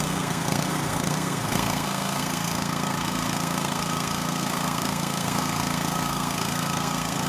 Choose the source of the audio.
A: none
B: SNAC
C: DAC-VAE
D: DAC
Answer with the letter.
B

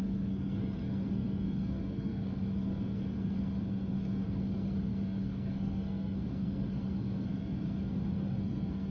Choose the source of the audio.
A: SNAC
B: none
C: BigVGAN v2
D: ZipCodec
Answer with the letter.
A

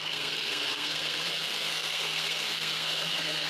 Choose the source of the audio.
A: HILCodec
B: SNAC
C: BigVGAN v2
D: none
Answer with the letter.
B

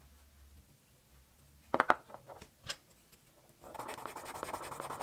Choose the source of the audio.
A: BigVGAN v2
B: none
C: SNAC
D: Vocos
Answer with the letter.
B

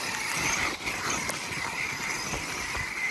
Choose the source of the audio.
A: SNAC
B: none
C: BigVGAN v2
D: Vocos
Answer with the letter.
B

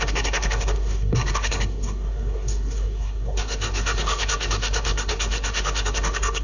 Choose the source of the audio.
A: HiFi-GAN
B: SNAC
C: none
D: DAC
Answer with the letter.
B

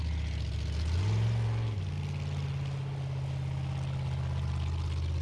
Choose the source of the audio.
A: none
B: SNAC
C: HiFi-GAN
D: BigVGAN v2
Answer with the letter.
A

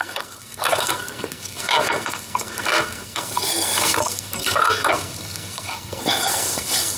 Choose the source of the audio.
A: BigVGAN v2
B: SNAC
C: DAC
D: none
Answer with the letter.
B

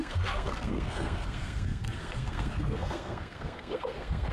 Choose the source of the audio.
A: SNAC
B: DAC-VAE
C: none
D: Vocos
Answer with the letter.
A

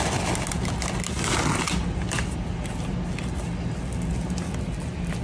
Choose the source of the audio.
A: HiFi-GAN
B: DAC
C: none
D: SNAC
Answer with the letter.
C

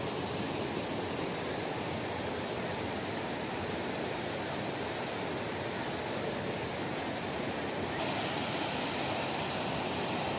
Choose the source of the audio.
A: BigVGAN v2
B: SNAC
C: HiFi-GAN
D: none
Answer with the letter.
D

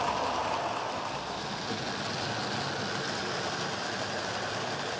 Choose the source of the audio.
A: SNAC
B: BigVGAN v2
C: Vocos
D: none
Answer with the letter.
D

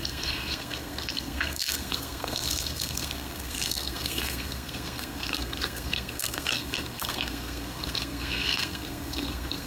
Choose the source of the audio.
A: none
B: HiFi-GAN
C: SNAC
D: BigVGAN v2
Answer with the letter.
C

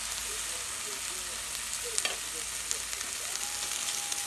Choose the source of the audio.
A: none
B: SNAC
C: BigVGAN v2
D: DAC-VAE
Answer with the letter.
A